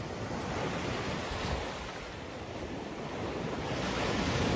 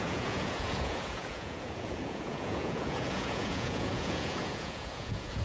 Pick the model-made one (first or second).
second